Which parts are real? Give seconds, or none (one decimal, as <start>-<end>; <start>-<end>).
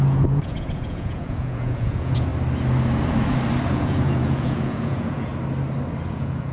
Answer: 2.3-3.7; 5.3-6.1